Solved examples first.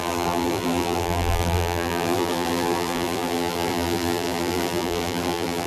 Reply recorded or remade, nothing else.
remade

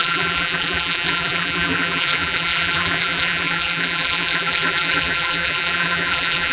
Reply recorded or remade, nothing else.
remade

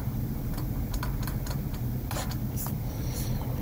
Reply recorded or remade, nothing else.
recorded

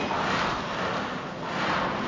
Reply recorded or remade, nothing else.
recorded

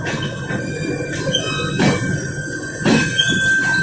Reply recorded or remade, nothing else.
recorded